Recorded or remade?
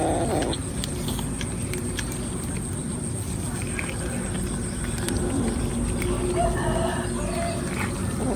recorded